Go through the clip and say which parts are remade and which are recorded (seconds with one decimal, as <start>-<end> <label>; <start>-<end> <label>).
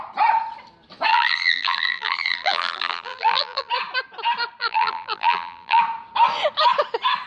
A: 0.0-1.1 recorded; 1.1-3.7 remade; 3.7-4.6 recorded; 4.6-5.8 remade; 5.8-7.3 recorded